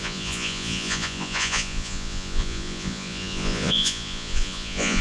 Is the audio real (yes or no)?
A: no